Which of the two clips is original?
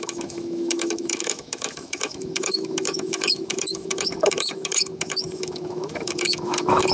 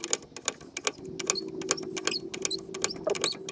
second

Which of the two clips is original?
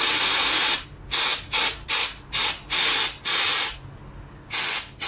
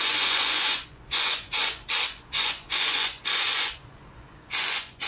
first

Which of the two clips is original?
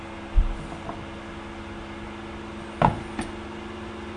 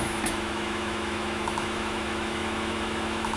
first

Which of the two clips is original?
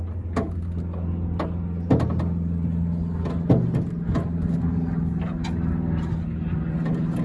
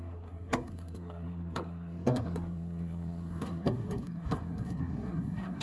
first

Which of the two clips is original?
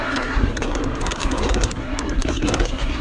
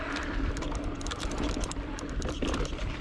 second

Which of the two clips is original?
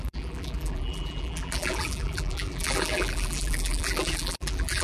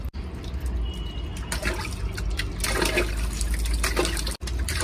second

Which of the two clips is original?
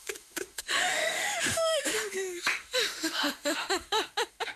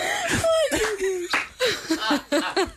second